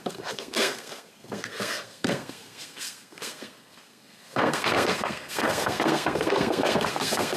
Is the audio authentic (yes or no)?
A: no